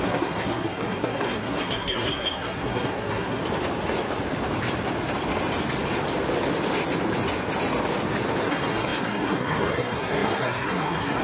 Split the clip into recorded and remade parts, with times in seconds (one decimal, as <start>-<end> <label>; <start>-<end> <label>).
0.0-3.4 remade; 3.4-8.5 recorded; 8.5-11.2 remade

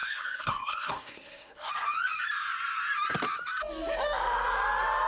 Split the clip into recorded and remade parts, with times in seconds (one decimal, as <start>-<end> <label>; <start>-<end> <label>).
0.0-1.7 remade; 1.7-5.1 recorded